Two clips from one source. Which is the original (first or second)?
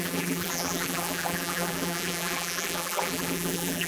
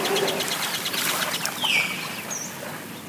second